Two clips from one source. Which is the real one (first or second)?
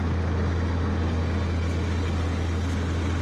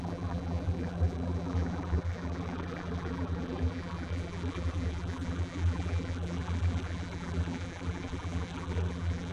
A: first